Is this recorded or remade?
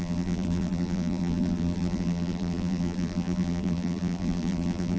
remade